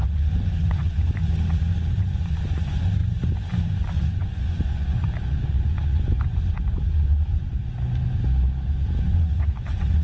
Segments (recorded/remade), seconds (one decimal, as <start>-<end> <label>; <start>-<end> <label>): 0.0-1.3 remade; 1.3-2.0 recorded; 2.0-3.0 remade; 3.0-3.6 recorded; 3.6-7.7 remade; 7.7-9.1 recorded; 9.1-10.0 remade